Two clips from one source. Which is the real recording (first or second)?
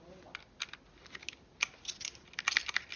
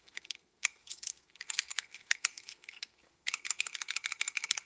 first